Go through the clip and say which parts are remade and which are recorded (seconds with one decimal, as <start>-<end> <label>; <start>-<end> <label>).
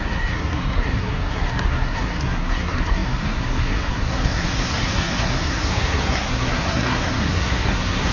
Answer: 0.0-8.1 remade